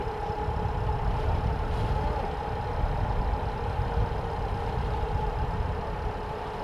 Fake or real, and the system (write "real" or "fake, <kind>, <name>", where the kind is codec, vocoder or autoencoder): real